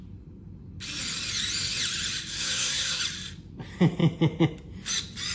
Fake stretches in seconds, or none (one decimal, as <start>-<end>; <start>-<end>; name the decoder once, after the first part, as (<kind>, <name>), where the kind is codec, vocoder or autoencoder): 2.3-3.0 (codec, SNAC)